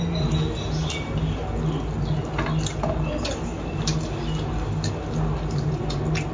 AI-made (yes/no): no